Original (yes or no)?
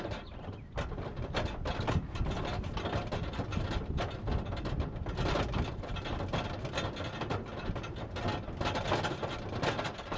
yes